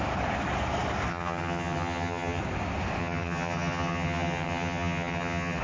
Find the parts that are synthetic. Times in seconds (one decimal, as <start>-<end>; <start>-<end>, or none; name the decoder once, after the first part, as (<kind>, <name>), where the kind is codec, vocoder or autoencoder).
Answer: 1.1-2.4 (vocoder, HiFi-GAN); 3.0-5.6